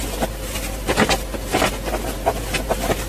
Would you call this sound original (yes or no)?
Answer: yes